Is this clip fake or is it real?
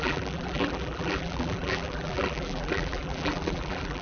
fake